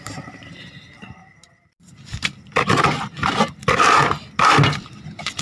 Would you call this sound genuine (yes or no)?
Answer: yes